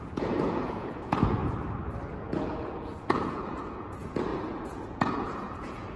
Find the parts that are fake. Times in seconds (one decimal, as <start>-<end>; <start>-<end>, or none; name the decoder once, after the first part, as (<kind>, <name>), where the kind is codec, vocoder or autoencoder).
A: 0.0-1.4 (vocoder, Vocos); 2.1-6.0